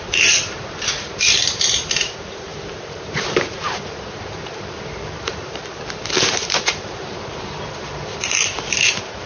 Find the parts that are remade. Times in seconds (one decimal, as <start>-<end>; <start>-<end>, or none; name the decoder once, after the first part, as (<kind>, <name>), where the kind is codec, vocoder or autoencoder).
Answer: 0.0-9.3 (vocoder, BigVGAN v2)